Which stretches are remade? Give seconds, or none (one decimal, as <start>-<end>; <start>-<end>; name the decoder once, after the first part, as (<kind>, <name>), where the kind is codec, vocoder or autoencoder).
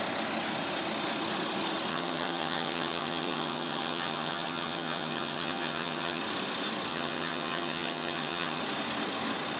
1.9-6.2 (vocoder, HiFi-GAN); 6.9-8.6